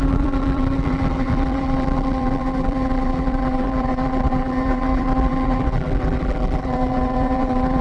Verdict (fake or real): fake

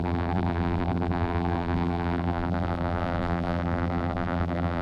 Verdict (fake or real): fake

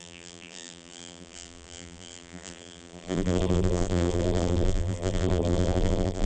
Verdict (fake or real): fake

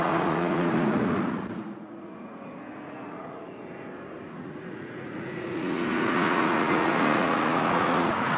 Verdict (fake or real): fake